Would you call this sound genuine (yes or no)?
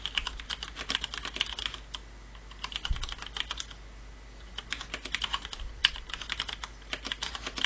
yes